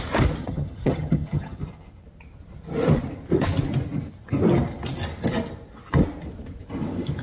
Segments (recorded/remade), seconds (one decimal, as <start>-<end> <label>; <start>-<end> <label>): 0.0-0.4 recorded; 0.4-1.6 remade; 1.6-7.2 recorded